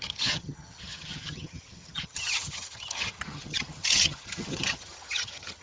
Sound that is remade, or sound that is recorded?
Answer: remade